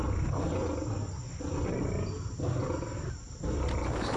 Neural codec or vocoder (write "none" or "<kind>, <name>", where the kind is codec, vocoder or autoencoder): none